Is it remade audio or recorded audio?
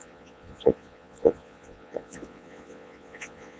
remade